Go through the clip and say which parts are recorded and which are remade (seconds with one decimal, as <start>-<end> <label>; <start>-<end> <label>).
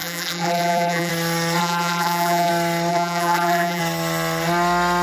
0.0-1.1 remade; 1.1-1.6 recorded; 1.6-2.5 remade; 2.5-2.9 recorded; 2.9-3.8 remade; 3.8-5.0 recorded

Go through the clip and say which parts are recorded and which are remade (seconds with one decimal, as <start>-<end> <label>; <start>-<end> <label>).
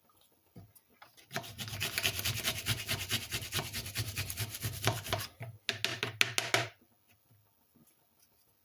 0.0-8.6 recorded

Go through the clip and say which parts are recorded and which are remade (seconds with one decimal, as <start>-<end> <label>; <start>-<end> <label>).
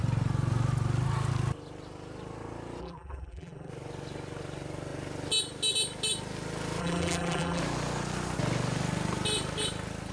0.0-2.8 recorded; 2.8-3.7 remade; 3.7-6.8 recorded; 6.8-7.6 remade; 7.6-10.1 recorded